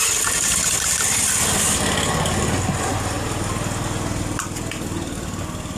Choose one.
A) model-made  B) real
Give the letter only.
B